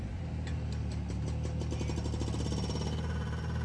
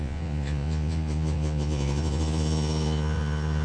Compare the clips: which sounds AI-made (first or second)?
second